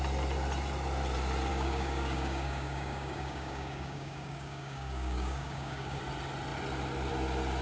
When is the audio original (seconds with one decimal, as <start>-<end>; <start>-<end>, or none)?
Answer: 0.0-1.5; 6.0-7.6